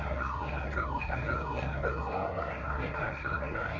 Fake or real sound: fake